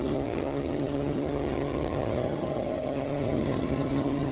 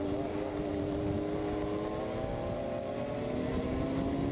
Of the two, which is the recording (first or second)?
second